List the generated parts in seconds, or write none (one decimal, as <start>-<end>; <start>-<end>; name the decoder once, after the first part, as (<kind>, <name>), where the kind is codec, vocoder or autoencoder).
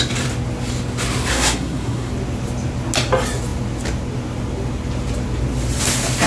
1.3-2.1 (codec, SNAC)